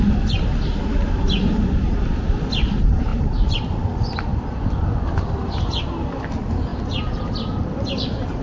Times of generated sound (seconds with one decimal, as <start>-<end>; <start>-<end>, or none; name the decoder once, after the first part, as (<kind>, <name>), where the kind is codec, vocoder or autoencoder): none

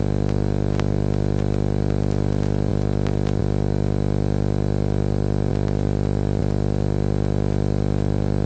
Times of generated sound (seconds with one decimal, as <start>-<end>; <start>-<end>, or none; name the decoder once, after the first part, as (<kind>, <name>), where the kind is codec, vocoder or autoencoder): none

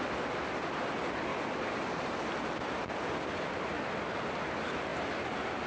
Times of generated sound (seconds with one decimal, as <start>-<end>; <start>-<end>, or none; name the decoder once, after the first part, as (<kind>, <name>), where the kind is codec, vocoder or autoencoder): none

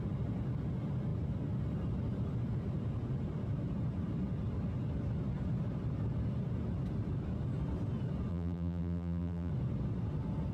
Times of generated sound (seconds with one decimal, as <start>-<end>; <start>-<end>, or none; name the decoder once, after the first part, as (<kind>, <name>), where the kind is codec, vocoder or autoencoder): 8.3-9.5 (vocoder, BigVGAN v2)

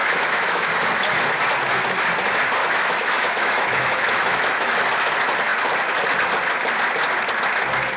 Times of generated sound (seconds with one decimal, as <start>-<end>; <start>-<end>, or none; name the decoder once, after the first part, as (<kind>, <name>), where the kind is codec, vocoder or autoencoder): 0.0-1.2 (autoencoder, DAC-VAE); 2.6-4.8

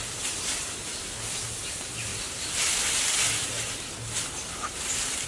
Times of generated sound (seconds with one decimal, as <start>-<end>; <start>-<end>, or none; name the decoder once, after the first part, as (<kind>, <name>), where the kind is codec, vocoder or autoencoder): 0.0-1.6 (vocoder, BigVGAN v2); 2.1-5.3

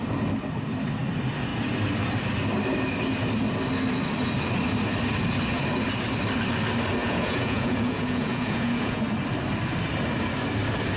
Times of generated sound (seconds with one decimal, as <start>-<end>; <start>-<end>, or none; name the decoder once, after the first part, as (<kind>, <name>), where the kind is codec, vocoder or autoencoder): 7.0-9.0 (vocoder, Vocos)